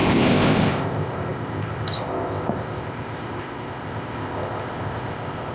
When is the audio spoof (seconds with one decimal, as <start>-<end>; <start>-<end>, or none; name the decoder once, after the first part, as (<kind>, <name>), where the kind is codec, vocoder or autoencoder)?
0.0-5.5 (codec, ZipCodec)

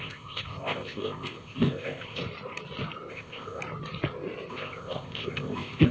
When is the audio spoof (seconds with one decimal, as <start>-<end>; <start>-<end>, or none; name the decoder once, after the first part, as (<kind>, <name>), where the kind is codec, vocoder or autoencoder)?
0.0-2.2 (codec, ZipCodec); 3.1-3.6; 4.5-5.9

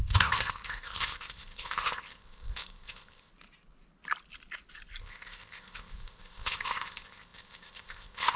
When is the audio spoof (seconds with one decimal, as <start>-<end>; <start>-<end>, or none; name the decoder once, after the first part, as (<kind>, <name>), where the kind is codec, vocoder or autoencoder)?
0.0-3.3 (codec, ZipCodec); 5.0-8.4

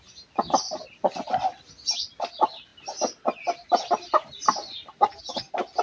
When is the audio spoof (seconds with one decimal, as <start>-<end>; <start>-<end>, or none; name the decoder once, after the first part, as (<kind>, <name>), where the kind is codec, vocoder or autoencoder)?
none